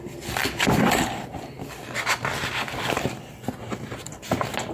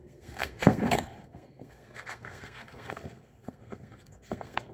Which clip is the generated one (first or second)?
second